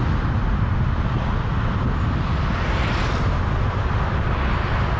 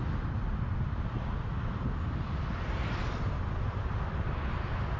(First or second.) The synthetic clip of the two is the second